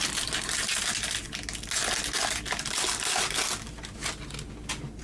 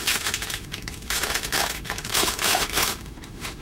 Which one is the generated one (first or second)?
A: second